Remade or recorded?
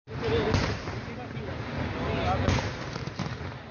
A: recorded